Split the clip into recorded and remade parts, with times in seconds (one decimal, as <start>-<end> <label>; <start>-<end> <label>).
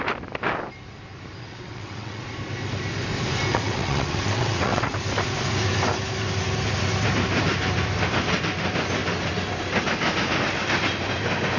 0.0-1.4 recorded; 1.4-2.2 remade; 2.2-3.5 recorded; 3.5-4.9 remade; 4.9-11.6 recorded